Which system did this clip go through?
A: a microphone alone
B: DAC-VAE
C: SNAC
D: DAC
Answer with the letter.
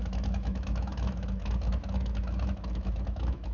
B